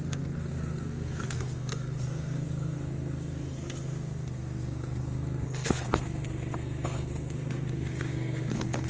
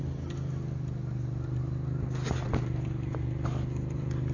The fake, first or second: first